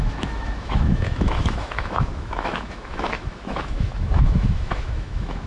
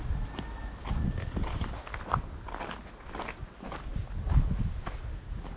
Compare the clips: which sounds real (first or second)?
second